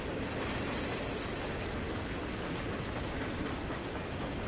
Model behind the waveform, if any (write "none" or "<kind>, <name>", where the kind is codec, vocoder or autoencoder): none